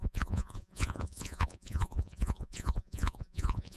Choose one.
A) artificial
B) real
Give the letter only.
A